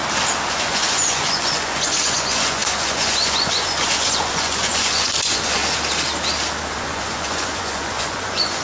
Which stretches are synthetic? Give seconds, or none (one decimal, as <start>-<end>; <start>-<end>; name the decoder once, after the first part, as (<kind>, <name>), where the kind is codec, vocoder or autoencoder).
0.5-5.6 (vocoder, Vocos); 6.7-8.6